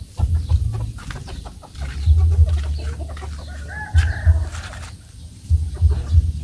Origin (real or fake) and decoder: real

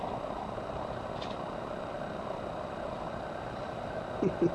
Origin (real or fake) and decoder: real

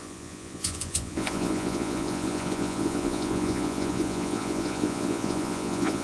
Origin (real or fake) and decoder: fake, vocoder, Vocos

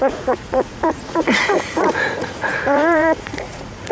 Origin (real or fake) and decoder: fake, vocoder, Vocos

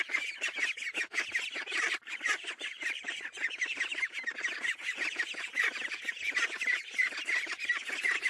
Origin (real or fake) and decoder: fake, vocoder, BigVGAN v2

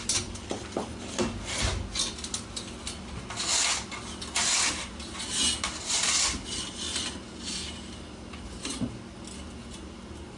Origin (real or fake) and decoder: real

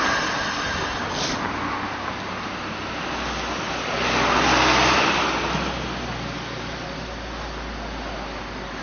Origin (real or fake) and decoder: real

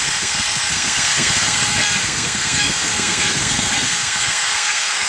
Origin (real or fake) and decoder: fake, codec, SNAC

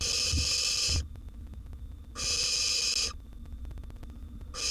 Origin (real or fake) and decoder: real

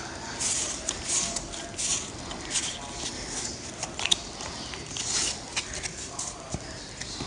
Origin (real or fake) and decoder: real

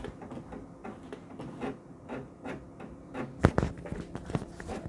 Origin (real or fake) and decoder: real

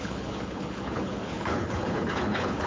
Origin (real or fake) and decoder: fake, codec, HILCodec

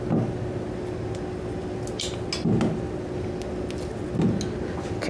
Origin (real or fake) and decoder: real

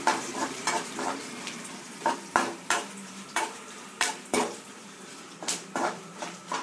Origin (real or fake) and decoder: fake, vocoder, BigVGAN v2